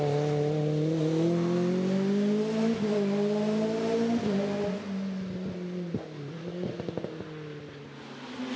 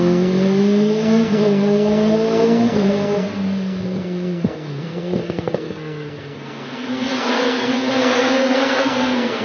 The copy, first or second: second